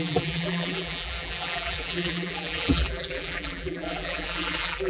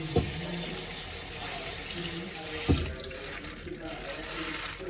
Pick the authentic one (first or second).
second